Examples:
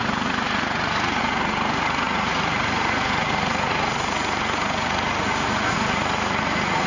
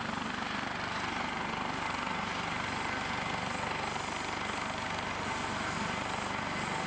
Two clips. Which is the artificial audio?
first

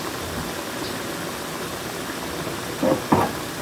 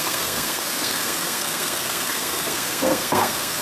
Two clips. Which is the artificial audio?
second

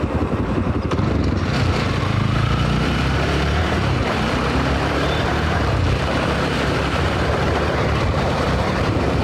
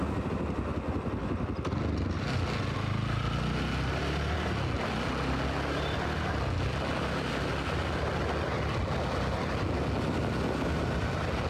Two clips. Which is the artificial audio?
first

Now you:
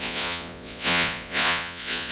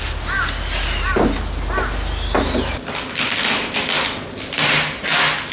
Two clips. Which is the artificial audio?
first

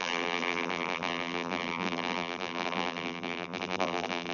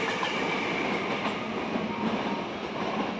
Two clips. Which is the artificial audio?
first